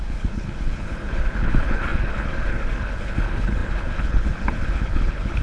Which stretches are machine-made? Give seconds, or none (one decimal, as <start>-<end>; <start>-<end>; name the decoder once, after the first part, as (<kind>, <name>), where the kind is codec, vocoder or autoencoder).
0.0-5.4 (codec, HILCodec)